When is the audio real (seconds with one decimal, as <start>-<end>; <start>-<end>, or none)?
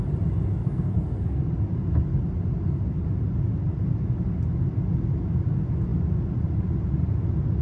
0.0-0.6; 1.4-7.6